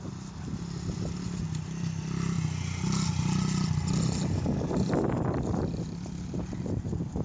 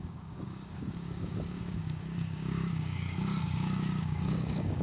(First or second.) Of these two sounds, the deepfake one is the second